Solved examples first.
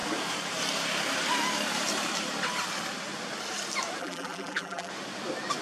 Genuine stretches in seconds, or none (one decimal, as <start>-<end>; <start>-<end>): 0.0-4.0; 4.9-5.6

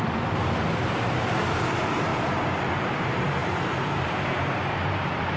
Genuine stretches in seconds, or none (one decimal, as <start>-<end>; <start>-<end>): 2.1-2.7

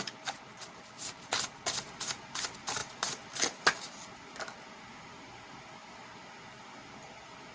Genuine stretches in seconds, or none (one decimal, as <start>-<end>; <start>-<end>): 0.0-7.5